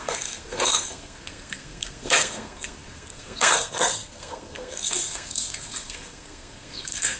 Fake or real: fake